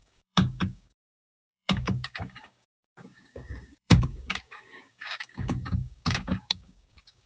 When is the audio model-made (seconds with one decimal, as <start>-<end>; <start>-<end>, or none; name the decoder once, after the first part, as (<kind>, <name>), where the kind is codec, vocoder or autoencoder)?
0.0-7.3 (codec, DAC)